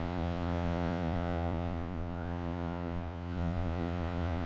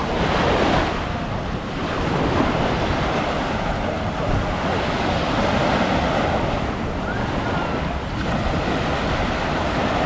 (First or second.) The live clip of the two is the second